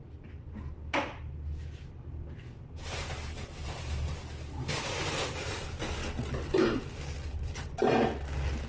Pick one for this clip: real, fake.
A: real